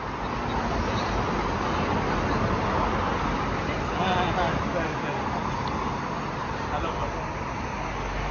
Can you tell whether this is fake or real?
real